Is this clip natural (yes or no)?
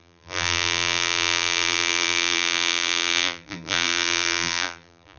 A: no